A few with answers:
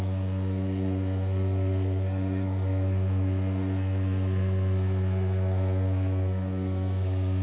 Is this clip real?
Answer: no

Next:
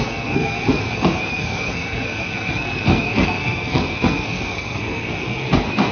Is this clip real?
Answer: no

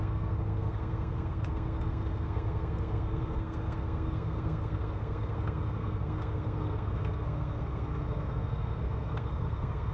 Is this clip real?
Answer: no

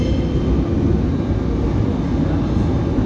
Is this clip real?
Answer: yes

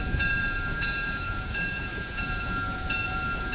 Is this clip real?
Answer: no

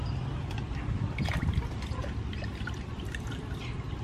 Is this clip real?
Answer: no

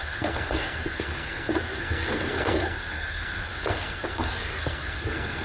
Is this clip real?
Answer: no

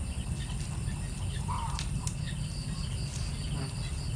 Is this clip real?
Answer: yes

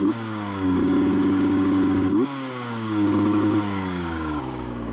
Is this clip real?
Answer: no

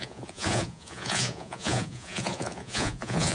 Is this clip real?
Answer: no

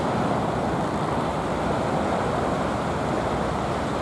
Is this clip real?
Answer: yes